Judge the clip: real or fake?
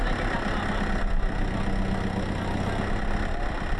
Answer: real